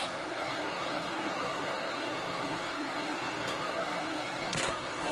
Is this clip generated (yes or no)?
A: yes